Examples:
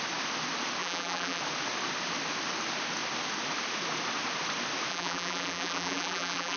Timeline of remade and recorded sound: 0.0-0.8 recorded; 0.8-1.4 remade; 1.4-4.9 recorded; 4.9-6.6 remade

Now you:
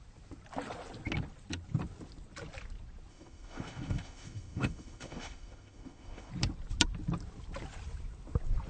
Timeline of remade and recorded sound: 0.0-3.1 recorded; 3.1-6.3 remade; 6.3-8.7 recorded

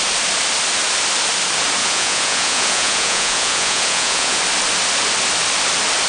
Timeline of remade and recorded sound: 0.0-1.8 recorded; 1.8-4.4 remade; 4.4-6.1 recorded

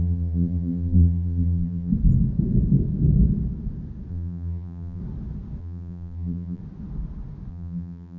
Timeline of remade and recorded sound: 0.0-1.9 remade; 1.9-4.1 recorded; 4.1-5.0 remade; 5.0-5.6 recorded; 5.6-6.6 remade; 6.6-7.5 recorded; 7.5-8.2 remade

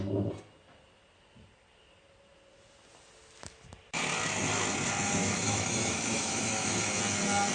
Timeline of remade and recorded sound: 0.0-5.2 recorded; 5.2-6.9 remade; 6.9-7.5 recorded

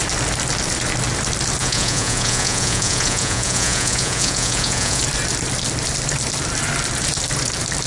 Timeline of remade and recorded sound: 0.0-1.6 recorded; 1.6-5.0 remade; 5.0-7.9 recorded